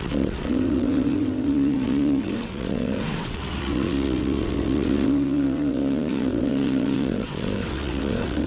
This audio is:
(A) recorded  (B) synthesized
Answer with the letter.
B